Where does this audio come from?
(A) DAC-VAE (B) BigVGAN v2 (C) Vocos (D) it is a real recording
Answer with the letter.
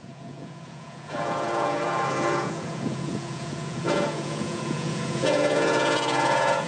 C